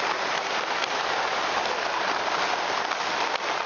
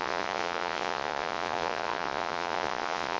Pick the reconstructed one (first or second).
second